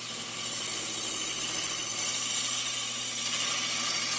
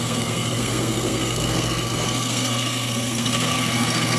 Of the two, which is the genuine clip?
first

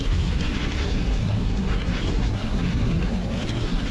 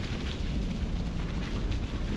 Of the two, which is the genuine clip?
second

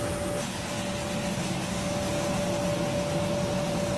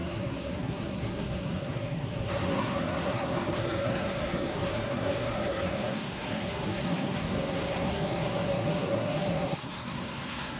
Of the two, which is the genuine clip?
first